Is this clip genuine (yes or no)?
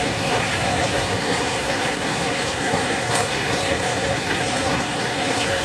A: no